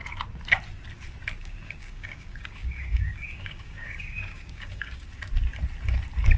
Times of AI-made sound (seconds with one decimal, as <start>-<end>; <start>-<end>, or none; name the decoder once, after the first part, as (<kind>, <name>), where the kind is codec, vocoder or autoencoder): 1.4-5.2 (codec, DAC)